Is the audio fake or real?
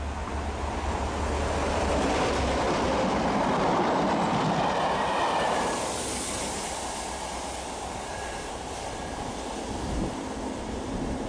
real